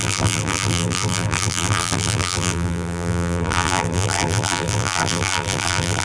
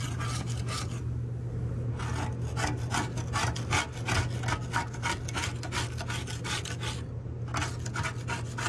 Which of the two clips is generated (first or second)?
first